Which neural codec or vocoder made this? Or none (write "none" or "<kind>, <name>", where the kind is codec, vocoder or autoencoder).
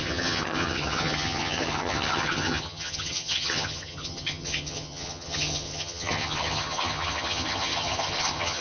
vocoder, HiFi-GAN